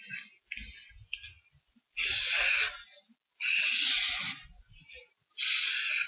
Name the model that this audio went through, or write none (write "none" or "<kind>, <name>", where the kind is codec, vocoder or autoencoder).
none